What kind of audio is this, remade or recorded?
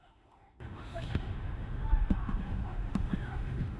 remade